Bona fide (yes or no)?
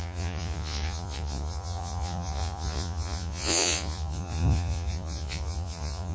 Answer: no